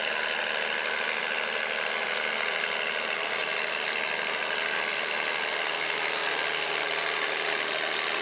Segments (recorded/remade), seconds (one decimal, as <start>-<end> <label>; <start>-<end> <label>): 0.0-8.2 recorded